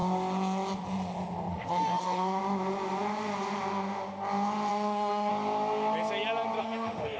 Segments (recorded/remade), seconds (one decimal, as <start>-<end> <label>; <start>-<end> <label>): 0.0-1.5 recorded; 1.5-2.4 remade; 2.4-4.7 recorded; 4.7-5.3 remade; 5.3-6.6 recorded; 6.6-7.2 remade